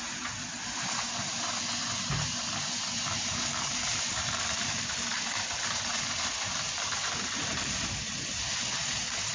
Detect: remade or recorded remade